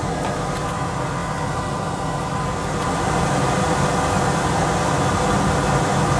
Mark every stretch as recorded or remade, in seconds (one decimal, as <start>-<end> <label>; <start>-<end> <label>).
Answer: 0.0-6.2 recorded